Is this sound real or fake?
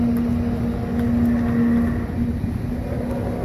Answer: real